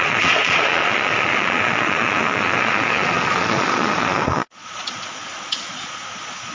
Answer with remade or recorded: remade